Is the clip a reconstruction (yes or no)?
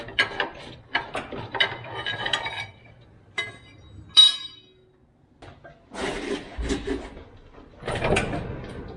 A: no